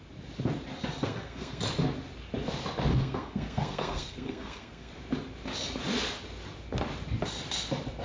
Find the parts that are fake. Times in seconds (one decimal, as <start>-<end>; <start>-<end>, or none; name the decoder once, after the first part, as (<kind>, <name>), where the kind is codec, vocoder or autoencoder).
1.0-1.6 (codec, SNAC); 2.9-4.9